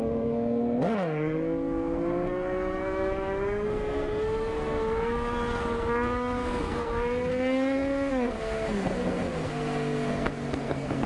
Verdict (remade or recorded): remade